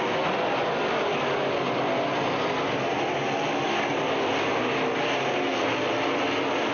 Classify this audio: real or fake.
real